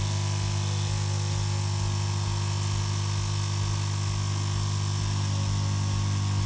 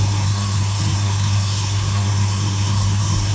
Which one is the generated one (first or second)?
second